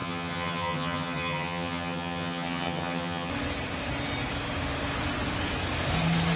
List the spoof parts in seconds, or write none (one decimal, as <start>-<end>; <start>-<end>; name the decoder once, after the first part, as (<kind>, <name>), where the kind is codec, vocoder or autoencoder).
0.0-3.3 (vocoder, HiFi-GAN)